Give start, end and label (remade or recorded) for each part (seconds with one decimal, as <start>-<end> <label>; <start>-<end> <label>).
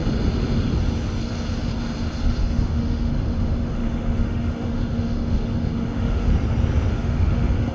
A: 0.0-2.4 recorded; 2.4-6.3 remade; 6.3-6.9 recorded; 6.9-7.7 remade